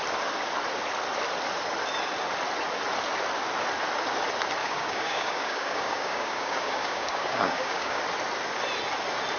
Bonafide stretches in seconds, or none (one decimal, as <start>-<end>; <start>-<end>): 0.0-4.6; 8.0-9.4